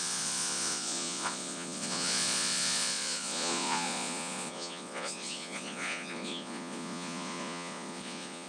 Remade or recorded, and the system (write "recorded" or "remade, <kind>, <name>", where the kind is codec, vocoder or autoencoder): remade, vocoder, Vocos